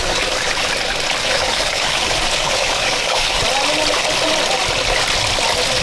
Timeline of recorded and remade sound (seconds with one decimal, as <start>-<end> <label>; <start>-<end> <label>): 0.0-0.7 remade; 0.7-1.2 recorded; 1.2-3.4 remade; 3.4-5.8 recorded